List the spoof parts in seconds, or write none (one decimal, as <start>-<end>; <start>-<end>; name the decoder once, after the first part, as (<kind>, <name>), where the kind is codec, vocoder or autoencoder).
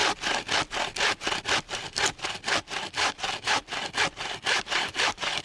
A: 1.4-3.6 (vocoder, BigVGAN v2); 4.5-5.4